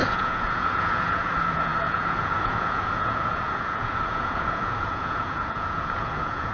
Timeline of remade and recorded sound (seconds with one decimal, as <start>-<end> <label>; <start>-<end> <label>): 0.0-6.5 remade